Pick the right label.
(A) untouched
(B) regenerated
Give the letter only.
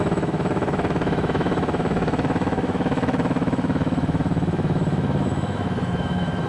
B